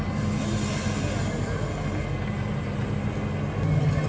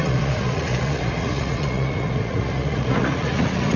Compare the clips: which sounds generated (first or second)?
second